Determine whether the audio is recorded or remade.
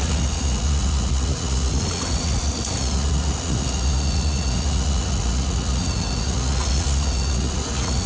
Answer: remade